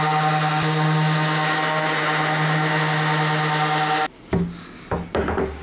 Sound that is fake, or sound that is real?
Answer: real